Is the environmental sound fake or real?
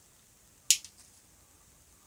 real